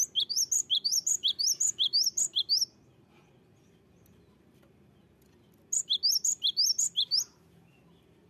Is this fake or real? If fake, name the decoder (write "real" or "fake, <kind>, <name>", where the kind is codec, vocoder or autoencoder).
real